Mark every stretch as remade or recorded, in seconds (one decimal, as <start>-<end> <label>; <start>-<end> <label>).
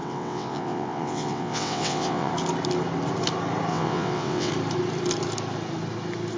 0.0-2.3 remade; 2.3-3.7 recorded; 3.7-4.5 remade; 4.5-6.4 recorded